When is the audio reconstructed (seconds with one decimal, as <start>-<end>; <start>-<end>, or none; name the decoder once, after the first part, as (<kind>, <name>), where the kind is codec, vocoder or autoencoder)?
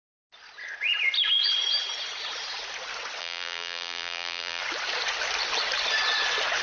3.2-4.6 (vocoder, BigVGAN v2)